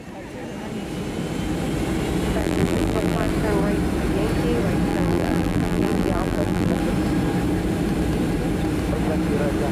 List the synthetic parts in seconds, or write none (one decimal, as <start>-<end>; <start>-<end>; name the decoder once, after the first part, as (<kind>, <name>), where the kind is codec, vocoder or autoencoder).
2.4-3.3 (vocoder, BigVGAN v2); 4.9-6.8

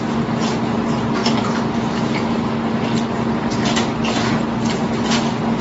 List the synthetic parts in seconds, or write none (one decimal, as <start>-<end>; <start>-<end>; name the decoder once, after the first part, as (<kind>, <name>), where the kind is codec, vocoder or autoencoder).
none

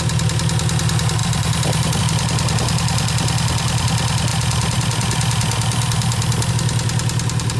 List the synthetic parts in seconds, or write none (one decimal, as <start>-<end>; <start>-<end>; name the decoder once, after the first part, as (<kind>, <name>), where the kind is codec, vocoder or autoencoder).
1.2-2.0 (vocoder, BigVGAN v2)

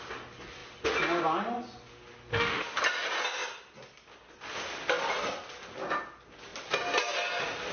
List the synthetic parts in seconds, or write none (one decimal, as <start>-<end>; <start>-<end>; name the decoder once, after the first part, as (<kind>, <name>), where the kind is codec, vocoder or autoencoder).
2.3-2.8 (autoencoder, DAC-VAE)

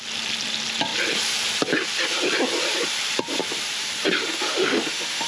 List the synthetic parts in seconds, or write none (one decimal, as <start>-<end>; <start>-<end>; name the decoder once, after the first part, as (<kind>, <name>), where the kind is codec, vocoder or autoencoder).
4.2-5.3 (autoencoder, DAC-VAE)

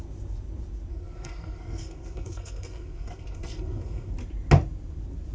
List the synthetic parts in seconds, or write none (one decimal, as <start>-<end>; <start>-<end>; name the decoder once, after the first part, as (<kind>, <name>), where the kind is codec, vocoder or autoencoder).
0.9-4.1 (codec, SNAC)

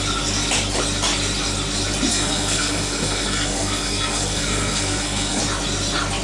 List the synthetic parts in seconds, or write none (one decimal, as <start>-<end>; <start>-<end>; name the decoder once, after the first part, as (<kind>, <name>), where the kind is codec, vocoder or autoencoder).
2.1-5.4 (codec, SNAC)

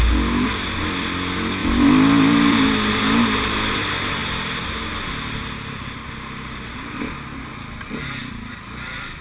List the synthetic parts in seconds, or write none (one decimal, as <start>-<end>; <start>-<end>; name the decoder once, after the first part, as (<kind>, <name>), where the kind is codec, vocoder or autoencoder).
8.2-9.2 (vocoder, BigVGAN v2)